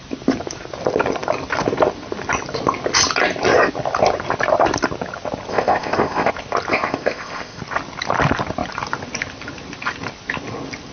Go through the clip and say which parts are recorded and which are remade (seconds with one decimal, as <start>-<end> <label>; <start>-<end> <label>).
0.0-5.5 recorded; 5.5-6.3 remade; 6.3-6.7 recorded; 6.7-7.6 remade; 7.6-10.9 recorded